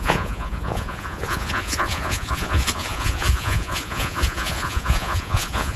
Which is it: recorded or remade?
remade